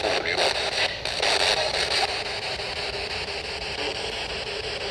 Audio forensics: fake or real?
real